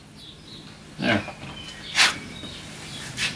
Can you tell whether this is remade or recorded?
recorded